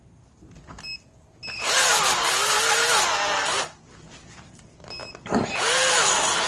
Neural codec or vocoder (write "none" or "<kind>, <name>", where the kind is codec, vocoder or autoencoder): none